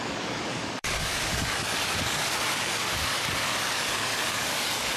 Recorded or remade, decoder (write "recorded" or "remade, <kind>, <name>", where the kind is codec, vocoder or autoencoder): remade, codec, DAC